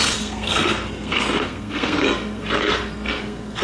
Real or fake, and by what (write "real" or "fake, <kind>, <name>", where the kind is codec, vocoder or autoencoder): fake, codec, SNAC